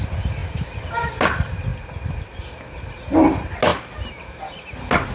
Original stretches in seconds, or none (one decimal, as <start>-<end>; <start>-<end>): 0.0-5.1